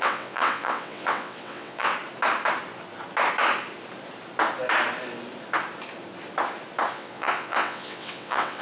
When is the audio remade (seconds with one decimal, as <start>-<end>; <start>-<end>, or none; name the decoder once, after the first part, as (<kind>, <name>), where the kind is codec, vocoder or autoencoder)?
0.0-1.9 (vocoder, WaveNeXt); 6.9-8.6